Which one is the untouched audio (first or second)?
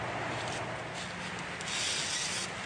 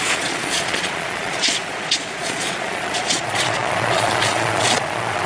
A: first